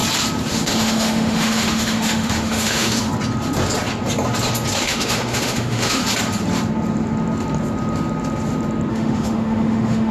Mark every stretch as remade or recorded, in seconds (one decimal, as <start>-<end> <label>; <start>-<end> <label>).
0.0-0.5 recorded; 0.5-3.1 remade; 3.1-4.8 recorded; 4.8-6.0 remade; 6.0-8.9 recorded; 8.9-10.1 remade